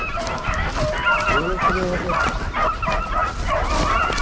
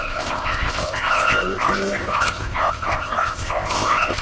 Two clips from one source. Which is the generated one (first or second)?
second